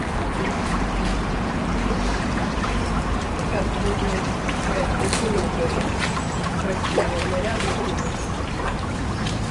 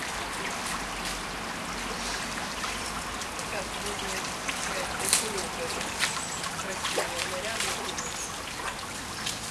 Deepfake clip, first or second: first